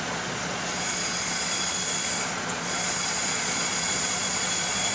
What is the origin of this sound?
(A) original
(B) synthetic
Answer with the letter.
B